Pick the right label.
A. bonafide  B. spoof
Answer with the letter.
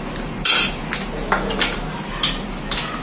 A